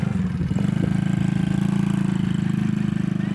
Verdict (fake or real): real